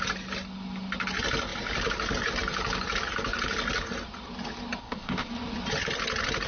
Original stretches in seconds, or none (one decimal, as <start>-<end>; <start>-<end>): 0.0-4.8; 5.3-6.5